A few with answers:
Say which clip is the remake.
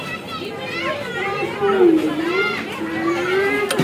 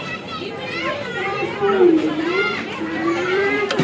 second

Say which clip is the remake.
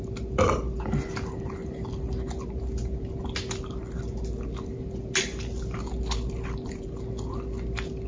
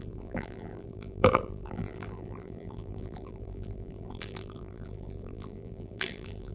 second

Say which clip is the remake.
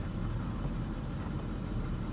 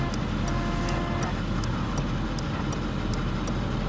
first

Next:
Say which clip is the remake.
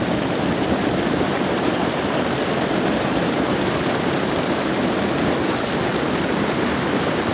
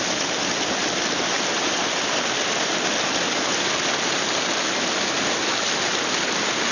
first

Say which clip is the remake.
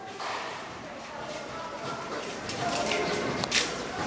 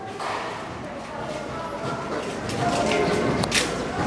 first